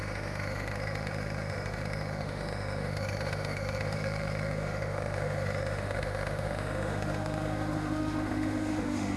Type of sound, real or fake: fake